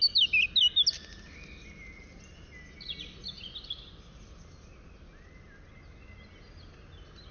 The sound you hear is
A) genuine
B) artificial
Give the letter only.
A